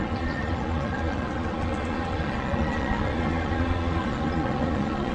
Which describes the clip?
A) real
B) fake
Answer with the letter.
B